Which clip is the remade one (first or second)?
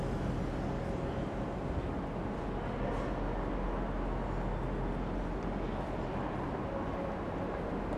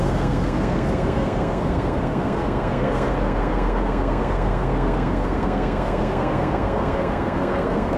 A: second